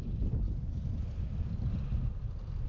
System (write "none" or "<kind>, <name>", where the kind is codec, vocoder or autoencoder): none